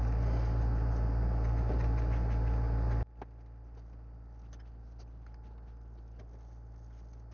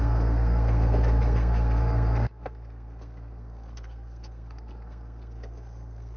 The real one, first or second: first